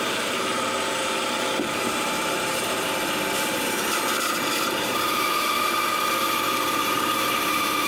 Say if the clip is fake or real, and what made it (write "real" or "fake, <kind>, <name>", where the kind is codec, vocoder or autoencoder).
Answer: fake, vocoder, BigVGAN v2